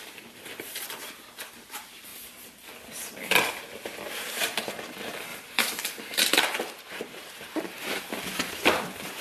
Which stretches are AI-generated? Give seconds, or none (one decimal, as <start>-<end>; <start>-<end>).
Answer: 0.0-2.1; 4.1-9.2